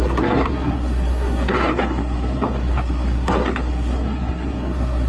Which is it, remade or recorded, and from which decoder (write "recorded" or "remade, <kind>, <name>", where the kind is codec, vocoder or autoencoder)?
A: remade, codec, SNAC